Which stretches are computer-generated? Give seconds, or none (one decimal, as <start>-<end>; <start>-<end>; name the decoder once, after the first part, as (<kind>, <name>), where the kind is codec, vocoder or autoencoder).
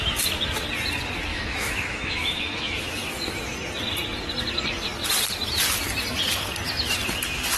1.3-3.1 (autoencoder, DAC-VAE)